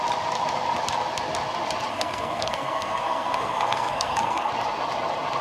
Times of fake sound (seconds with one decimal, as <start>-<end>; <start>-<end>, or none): 1.9-4.5